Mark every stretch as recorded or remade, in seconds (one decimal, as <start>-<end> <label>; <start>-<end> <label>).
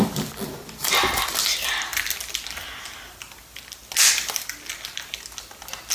0.0-5.9 recorded